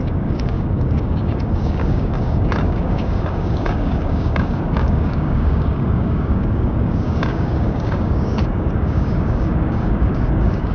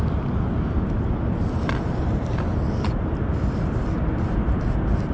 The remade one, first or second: first